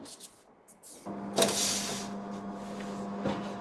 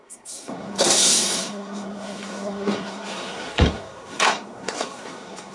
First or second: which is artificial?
second